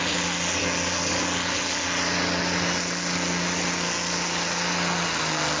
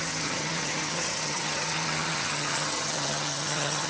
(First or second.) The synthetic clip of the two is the second